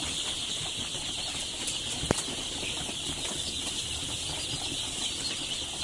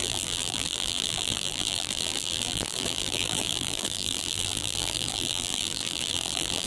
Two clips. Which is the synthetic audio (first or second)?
second